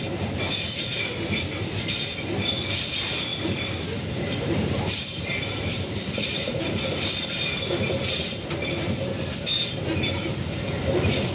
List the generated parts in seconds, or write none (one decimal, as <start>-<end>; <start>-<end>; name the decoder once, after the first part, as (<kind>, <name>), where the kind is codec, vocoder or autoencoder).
3.3-7.1 (vocoder, BigVGAN v2)